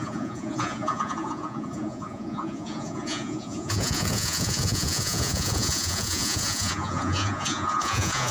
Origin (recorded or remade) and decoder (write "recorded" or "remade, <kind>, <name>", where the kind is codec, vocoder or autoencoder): remade, vocoder, Vocos